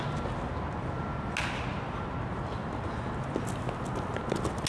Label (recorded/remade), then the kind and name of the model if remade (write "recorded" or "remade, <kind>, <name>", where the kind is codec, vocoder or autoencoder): recorded